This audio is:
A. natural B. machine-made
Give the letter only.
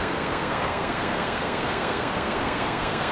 B